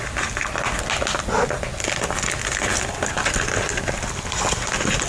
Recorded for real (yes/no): yes